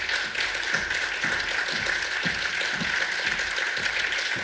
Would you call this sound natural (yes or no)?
yes